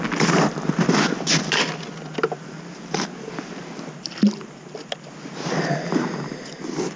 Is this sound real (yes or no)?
yes